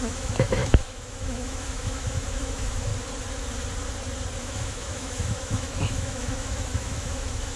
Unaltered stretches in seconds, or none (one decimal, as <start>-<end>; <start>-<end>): 2.9-4.4